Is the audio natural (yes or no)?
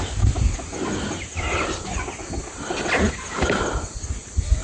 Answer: yes